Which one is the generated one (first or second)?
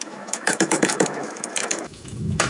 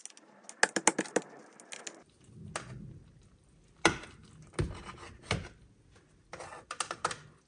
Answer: first